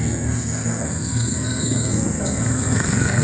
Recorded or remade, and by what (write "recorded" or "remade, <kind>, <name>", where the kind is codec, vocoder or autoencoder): remade, codec, SNAC